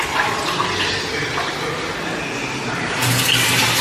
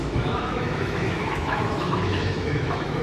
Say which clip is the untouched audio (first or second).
first